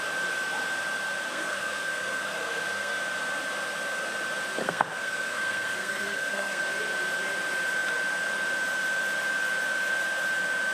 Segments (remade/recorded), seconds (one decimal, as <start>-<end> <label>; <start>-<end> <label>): 0.0-1.3 recorded; 1.3-3.0 remade; 3.0-4.6 recorded; 4.6-6.6 remade; 6.6-10.7 recorded